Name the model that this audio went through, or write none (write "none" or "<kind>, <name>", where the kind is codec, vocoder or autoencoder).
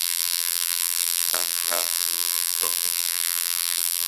vocoder, BigVGAN v2